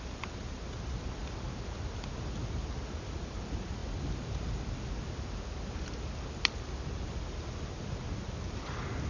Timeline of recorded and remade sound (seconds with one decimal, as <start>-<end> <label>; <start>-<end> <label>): 0.0-9.1 recorded